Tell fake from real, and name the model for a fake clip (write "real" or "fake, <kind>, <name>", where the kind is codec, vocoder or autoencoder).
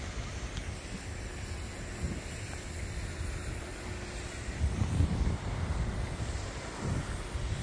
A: real